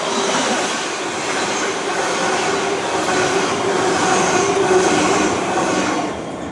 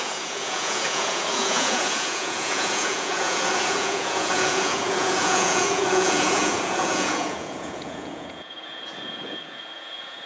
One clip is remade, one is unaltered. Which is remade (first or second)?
second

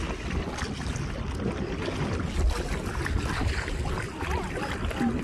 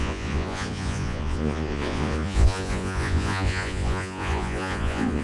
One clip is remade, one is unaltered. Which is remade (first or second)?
second